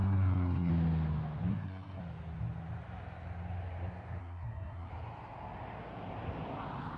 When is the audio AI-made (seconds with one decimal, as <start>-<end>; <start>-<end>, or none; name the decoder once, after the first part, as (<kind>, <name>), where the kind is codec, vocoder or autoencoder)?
0.0-0.7 (codec, SNAC); 1.5-2.0; 4.2-4.9